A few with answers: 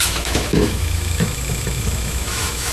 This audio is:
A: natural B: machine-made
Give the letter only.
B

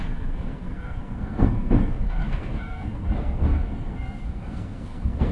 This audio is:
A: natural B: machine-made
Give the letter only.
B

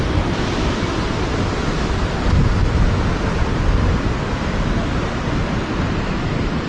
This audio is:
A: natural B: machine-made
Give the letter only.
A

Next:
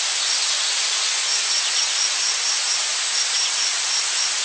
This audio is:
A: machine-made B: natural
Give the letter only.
B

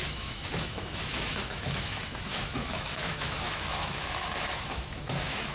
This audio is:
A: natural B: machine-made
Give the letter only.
B